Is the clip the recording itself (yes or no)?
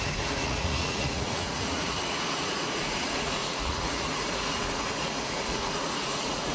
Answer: no